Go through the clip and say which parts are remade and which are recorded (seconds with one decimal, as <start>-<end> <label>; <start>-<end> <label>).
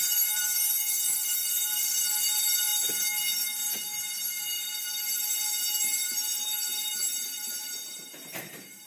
0.0-2.7 remade; 2.7-5.8 recorded; 5.8-8.9 remade